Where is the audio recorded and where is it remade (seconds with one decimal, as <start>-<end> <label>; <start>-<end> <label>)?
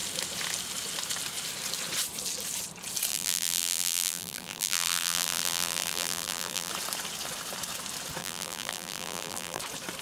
0.0-3.1 recorded; 3.1-6.7 remade; 6.7-8.2 recorded; 8.2-9.6 remade; 9.6-10.0 recorded